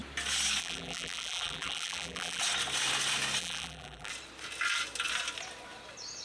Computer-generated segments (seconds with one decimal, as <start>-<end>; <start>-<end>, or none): 0.6-2.4; 3.4-4.1